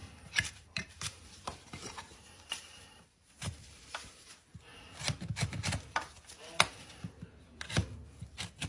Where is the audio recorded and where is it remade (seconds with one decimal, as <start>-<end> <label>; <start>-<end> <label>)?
0.0-4.3 remade; 4.3-8.7 recorded